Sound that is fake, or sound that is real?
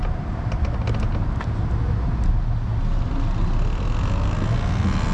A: real